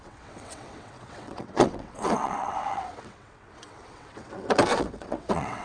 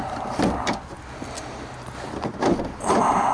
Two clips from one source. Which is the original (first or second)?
second